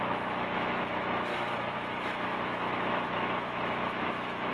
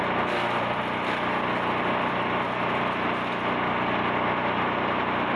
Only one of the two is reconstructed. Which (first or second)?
first